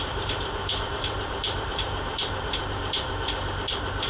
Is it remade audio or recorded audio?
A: remade